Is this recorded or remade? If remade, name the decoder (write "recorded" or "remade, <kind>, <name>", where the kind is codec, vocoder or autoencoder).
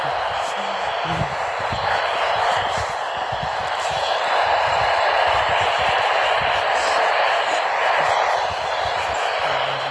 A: recorded